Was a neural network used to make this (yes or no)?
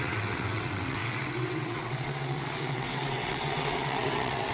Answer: yes